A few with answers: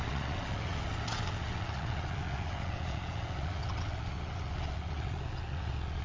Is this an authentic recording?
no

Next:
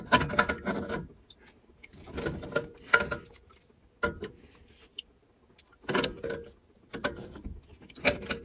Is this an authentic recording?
yes